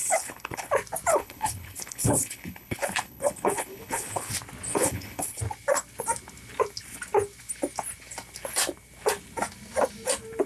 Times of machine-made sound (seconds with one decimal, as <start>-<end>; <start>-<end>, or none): 0.0-0.7; 1.1-4.3; 4.7-5.4

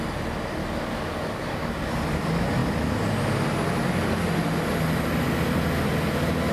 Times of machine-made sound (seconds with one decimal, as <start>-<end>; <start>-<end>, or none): 0.6-1.9

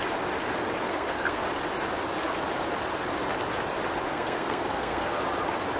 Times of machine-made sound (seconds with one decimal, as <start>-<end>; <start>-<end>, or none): 0.9-1.4; 4.1-5.2

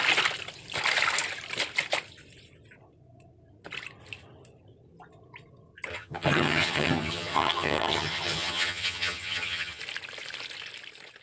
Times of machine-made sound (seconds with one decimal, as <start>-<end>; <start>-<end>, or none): 5.9-9.8

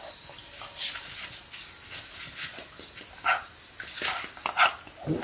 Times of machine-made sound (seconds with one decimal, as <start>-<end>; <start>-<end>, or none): none

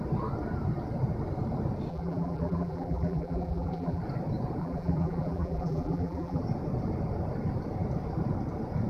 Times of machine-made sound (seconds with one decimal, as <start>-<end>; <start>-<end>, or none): 1.9-4.0; 4.6-6.4

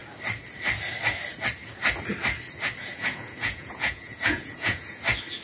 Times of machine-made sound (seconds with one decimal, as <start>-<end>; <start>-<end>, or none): 2.8-5.0

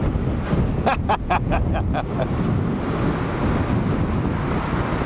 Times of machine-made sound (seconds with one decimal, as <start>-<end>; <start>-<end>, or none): none